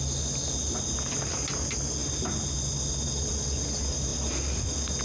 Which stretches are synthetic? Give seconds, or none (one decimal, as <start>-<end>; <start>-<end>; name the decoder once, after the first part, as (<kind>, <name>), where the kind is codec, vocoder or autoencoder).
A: none